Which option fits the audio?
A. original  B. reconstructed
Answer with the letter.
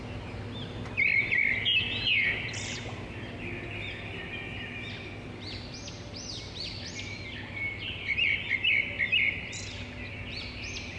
A